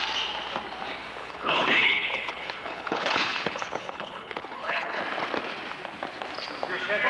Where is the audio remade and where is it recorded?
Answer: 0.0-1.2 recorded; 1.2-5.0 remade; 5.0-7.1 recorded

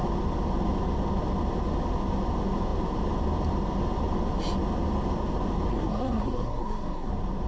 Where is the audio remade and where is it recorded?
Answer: 0.0-5.7 recorded; 5.7-7.1 remade; 7.1-7.5 recorded

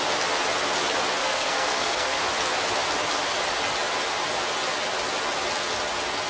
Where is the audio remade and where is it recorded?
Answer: 0.0-1.2 recorded; 1.2-2.2 remade; 2.2-6.3 recorded

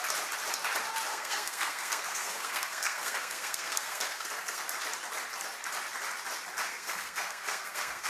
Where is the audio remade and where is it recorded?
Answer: 0.0-1.1 recorded; 1.1-4.6 remade; 4.6-6.7 recorded; 6.7-8.1 remade

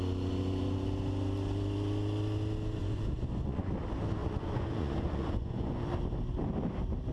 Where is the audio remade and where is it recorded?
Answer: 0.0-2.8 recorded; 2.8-3.7 remade; 3.7-4.2 recorded; 4.2-5.8 remade; 5.8-7.1 recorded